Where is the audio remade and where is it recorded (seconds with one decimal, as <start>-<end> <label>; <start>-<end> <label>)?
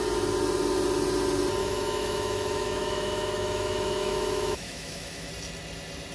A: 0.0-1.6 recorded; 1.6-5.3 remade; 5.3-6.1 recorded